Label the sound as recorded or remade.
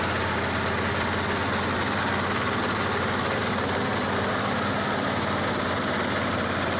recorded